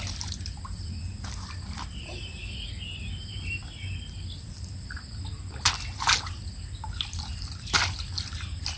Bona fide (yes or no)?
yes